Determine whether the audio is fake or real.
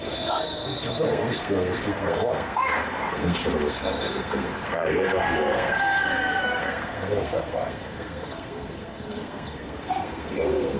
fake